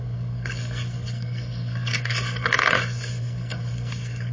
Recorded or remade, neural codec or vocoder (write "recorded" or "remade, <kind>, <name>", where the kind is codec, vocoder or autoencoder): remade, codec, SNAC